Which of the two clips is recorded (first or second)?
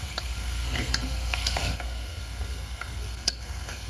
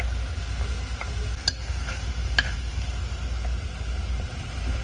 second